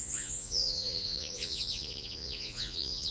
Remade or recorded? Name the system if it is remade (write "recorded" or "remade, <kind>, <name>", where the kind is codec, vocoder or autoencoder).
remade, vocoder, Vocos